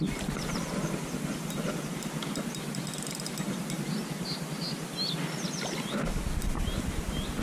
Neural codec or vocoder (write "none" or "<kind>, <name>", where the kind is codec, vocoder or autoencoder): none